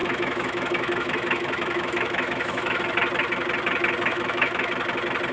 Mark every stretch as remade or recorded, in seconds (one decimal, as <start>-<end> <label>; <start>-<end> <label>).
0.0-2.8 remade; 2.8-4.1 recorded; 4.1-4.7 remade; 4.7-5.3 recorded